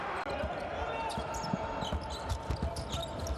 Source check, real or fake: real